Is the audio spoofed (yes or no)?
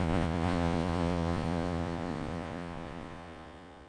yes